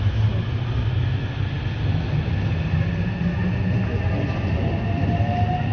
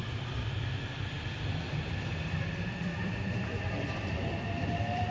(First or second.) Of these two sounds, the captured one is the first